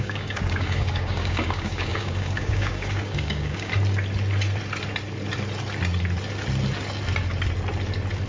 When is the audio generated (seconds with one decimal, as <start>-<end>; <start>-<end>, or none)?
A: 0.0-3.7